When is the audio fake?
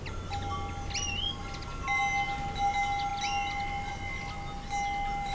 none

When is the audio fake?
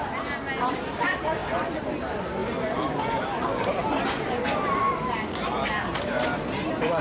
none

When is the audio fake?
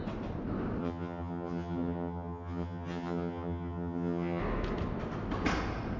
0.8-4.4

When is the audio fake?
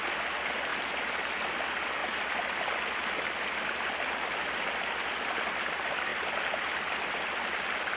none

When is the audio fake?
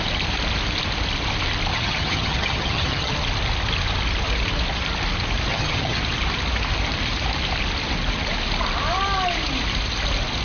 1.7-3.1; 5.5-6.0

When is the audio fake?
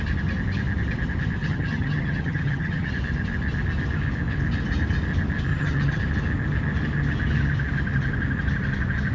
1.4-2.9; 5.5-6.0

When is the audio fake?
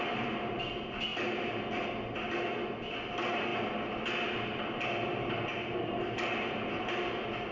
none